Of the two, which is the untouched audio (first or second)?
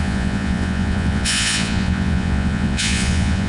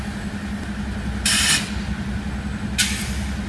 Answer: second